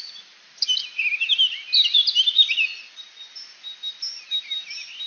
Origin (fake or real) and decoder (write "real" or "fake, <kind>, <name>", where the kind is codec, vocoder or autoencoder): real